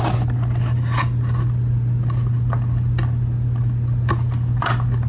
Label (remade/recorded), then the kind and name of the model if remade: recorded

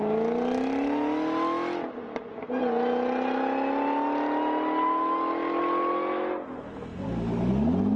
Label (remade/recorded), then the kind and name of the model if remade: recorded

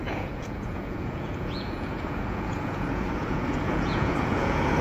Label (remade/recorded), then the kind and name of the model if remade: remade, vocoder, Vocos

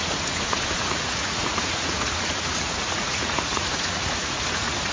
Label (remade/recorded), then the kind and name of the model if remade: remade, vocoder, Vocos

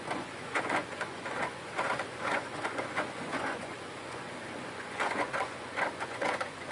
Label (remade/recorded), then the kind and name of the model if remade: remade, vocoder, Vocos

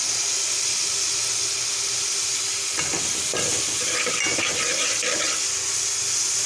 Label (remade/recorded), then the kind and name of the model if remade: recorded